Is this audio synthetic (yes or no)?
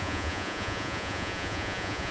yes